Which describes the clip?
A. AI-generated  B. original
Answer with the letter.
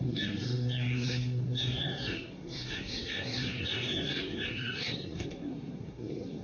A